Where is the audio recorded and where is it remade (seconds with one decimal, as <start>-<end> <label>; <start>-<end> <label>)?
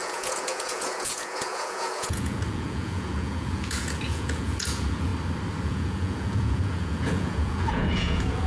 0.0-5.1 remade; 5.1-5.6 recorded; 5.6-8.5 remade